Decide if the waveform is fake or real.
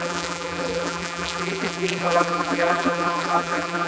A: fake